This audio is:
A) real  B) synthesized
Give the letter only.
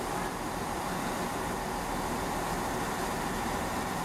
B